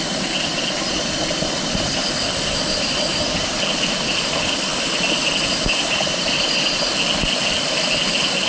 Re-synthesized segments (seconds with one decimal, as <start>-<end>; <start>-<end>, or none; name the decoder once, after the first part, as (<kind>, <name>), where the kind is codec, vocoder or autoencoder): none